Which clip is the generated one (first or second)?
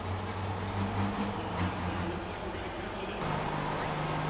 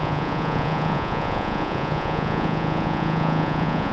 second